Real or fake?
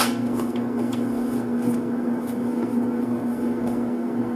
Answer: fake